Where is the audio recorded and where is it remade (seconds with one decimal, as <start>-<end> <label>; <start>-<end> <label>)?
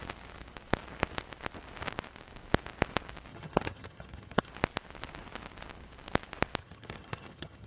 0.0-3.3 recorded; 3.3-4.5 remade; 4.5-6.6 recorded; 6.6-7.7 remade